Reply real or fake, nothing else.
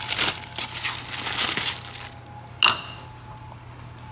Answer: real